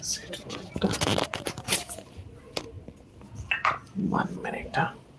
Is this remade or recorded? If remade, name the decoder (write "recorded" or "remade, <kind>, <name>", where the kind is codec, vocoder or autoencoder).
recorded